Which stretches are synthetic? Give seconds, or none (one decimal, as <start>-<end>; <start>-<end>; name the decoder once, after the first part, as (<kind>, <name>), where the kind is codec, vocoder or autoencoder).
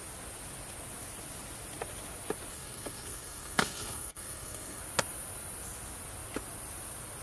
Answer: 2.5-4.8 (codec, SNAC)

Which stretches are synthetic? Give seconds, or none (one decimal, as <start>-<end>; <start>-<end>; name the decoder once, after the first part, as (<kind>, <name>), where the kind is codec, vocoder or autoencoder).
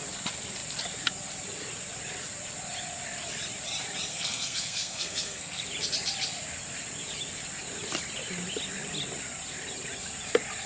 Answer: 4.1-5.6 (codec, SNAC)